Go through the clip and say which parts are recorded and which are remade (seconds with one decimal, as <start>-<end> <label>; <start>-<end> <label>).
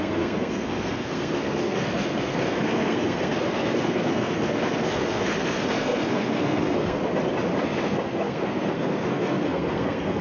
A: 0.0-7.0 remade; 7.0-7.6 recorded; 7.6-10.2 remade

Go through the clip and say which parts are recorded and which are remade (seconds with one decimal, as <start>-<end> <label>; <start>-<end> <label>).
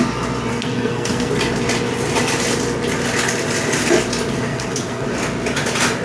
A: 0.0-0.5 recorded; 0.5-1.3 remade; 1.3-4.3 recorded; 4.3-5.1 remade; 5.1-6.0 recorded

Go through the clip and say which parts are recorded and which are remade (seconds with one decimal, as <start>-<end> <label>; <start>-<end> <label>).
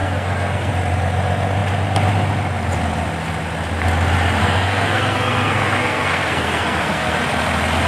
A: 0.0-0.7 remade; 0.7-4.4 recorded; 4.4-7.2 remade; 7.2-7.9 recorded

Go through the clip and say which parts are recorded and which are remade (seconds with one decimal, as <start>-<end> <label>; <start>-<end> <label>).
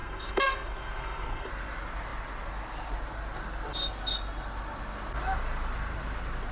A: 0.0-1.5 remade; 1.5-6.5 recorded